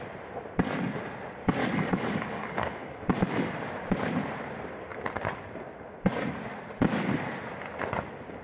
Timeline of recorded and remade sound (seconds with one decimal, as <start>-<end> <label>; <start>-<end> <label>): 0.0-1.6 recorded; 1.6-3.0 remade; 3.0-8.4 recorded